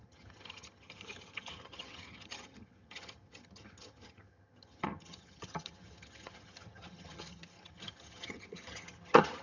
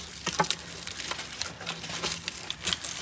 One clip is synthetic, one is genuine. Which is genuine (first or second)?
second